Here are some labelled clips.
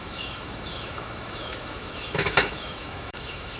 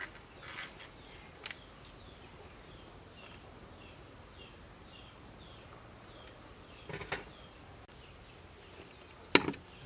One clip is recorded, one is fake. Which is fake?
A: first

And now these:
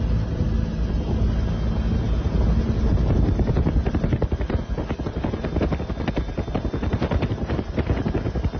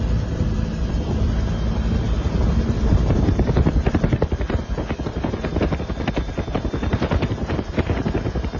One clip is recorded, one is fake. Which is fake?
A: second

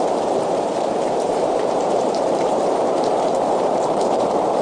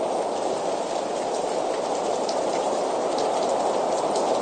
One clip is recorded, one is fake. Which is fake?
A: first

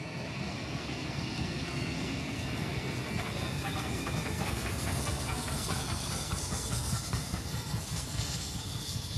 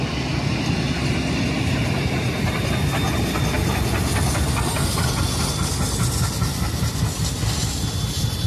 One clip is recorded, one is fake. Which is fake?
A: first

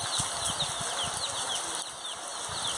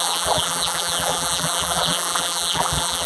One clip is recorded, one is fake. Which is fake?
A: second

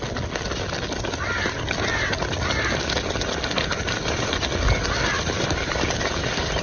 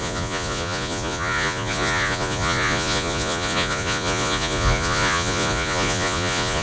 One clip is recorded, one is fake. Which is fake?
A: second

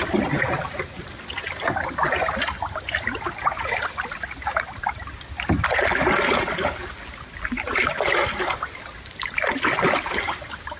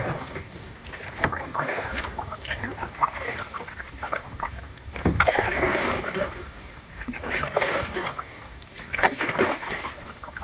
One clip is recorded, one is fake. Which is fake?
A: second